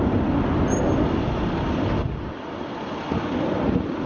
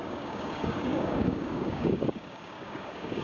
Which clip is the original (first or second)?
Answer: first